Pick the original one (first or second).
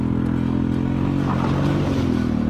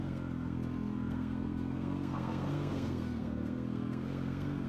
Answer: first